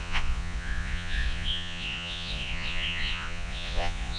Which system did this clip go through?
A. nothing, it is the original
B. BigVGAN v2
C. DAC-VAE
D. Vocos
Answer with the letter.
D